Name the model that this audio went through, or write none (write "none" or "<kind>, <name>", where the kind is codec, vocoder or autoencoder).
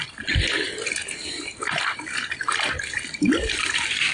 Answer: none